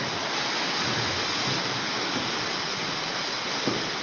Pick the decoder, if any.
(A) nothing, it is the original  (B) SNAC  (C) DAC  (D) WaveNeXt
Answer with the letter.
A